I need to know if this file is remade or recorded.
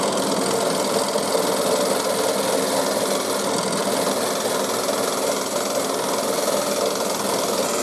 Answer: recorded